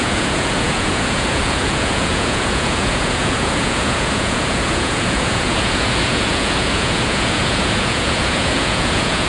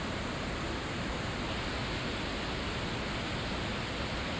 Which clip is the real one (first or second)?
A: second